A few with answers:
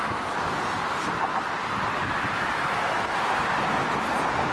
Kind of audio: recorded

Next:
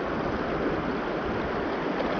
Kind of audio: recorded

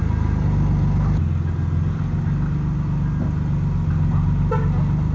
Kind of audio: recorded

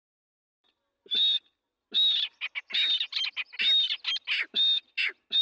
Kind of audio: recorded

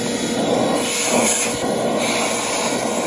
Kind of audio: recorded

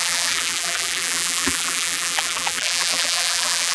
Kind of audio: remade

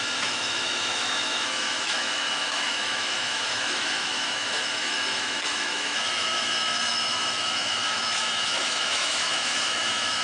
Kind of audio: remade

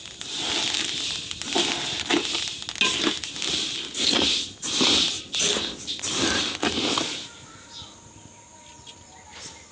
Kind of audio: recorded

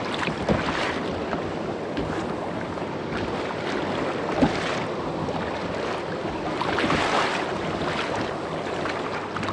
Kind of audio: recorded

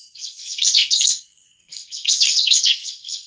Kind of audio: remade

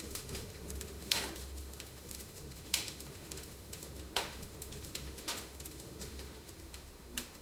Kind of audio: remade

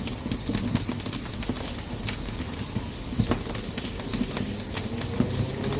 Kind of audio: recorded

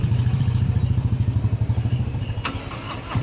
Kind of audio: remade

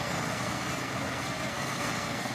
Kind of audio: remade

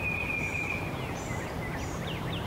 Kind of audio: recorded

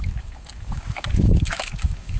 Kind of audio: remade